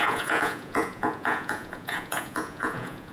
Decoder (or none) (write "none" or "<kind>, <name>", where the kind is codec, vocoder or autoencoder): vocoder, Vocos